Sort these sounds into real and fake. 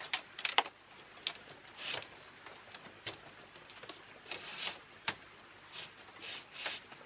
real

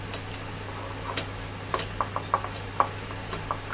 real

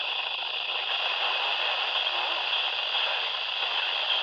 real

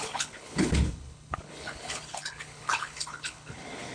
fake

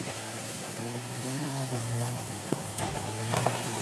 fake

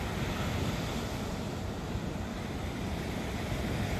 real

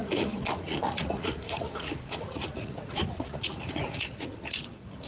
fake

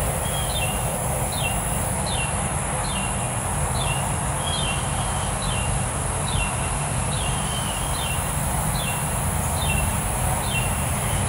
real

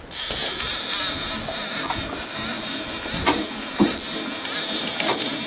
real